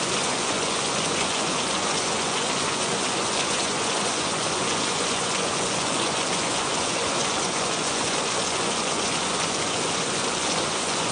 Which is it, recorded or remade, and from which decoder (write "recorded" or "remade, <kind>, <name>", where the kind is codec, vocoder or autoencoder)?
remade, vocoder, Vocos